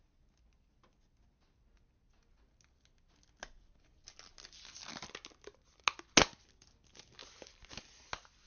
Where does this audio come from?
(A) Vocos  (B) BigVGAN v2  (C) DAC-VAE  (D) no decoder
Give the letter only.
D